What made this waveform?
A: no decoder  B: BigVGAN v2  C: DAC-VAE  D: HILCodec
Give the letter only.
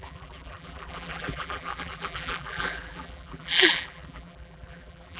B